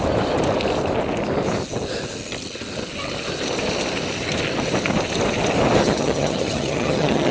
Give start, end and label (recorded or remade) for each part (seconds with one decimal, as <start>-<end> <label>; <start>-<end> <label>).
0.0-5.8 recorded; 5.8-7.3 remade